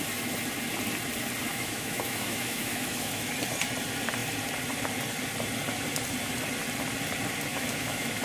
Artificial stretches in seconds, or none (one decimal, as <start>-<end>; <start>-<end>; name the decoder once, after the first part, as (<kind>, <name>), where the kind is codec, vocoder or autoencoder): 1.5-3.3 (autoencoder, DAC-VAE); 7.5-8.2